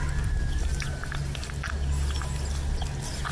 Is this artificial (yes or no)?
no